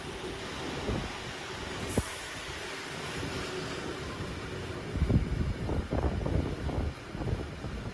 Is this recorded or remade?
recorded